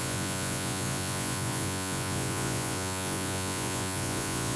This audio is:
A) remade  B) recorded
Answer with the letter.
A